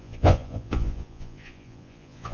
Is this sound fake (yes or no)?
yes